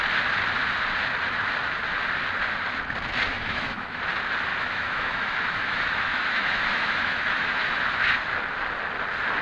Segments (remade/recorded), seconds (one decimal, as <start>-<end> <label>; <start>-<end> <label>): 0.0-3.3 recorded; 3.3-4.0 remade; 4.0-4.5 recorded; 4.5-7.7 remade; 7.7-9.4 recorded